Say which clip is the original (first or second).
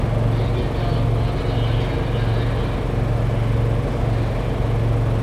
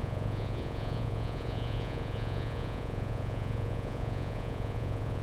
first